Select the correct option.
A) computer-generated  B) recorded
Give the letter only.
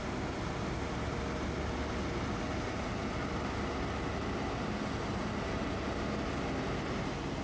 B